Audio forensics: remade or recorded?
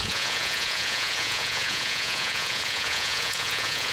remade